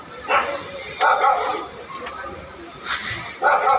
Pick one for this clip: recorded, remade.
recorded